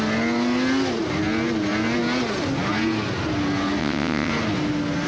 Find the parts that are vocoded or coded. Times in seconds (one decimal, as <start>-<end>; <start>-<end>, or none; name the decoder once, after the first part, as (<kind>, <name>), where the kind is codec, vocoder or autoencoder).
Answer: 3.8-4.3 (vocoder, WaveNeXt)